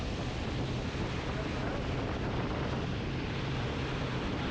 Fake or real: fake